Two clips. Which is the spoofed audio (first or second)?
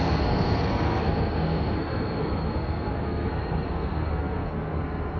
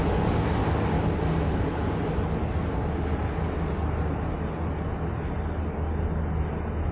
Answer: first